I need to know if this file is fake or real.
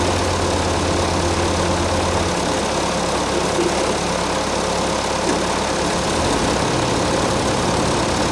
real